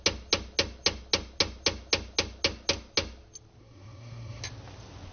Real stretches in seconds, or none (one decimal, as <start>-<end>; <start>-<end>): 0.0-3.6; 4.4-5.1